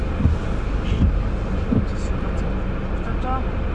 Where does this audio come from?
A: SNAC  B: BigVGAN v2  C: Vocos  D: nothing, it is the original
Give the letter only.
D